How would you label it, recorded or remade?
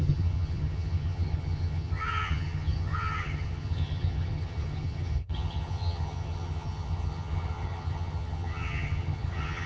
remade